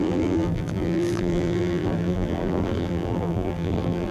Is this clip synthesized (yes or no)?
yes